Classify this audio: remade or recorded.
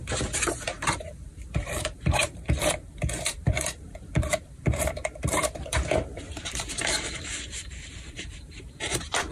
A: remade